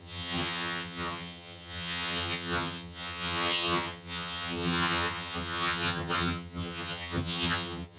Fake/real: fake